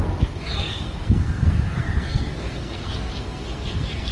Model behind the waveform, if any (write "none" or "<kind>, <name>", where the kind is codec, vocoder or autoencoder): codec, SNAC